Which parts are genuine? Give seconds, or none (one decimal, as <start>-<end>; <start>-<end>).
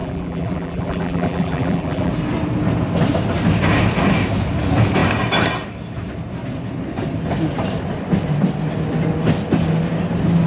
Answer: 2.1-10.5